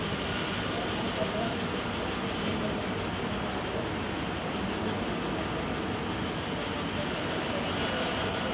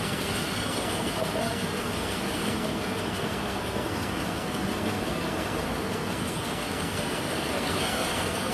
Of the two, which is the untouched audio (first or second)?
first